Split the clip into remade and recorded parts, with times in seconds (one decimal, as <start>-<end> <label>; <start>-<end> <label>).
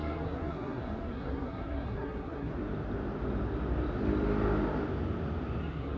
0.0-2.5 remade; 2.5-5.6 recorded; 5.6-6.0 remade